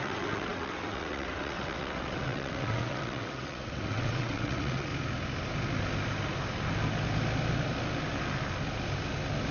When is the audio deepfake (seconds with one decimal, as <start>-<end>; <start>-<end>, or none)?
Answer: 0.0-4.9